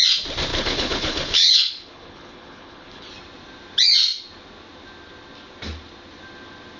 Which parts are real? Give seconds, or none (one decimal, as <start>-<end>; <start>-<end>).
0.0-0.5; 3.1-6.8